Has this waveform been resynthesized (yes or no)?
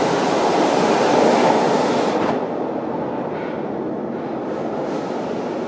no